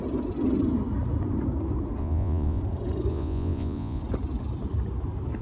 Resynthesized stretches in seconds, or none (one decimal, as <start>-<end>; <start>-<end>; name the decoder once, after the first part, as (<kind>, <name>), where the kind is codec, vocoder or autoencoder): 2.0-2.6 (vocoder, Vocos); 3.1-4.0